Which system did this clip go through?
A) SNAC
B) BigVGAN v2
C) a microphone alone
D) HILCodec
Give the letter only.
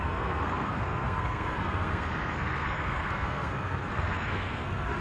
A